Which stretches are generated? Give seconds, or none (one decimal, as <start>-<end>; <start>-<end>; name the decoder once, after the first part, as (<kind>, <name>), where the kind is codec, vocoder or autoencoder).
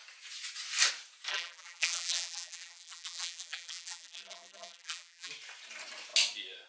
1.3-5.3 (vocoder, BigVGAN v2)